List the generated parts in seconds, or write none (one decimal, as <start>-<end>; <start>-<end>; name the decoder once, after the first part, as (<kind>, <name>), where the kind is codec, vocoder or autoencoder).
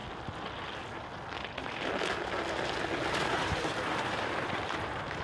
3.1-5.2 (vocoder, BigVGAN v2)